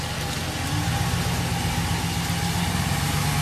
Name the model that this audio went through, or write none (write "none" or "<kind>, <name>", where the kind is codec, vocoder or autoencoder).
none